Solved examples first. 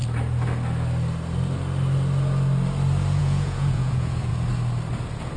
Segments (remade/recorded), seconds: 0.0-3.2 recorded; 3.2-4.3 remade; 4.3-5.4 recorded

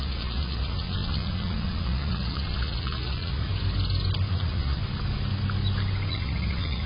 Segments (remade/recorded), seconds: 0.0-3.5 remade; 3.5-4.3 recorded; 4.3-4.8 remade; 4.8-6.1 recorded; 6.1-6.9 remade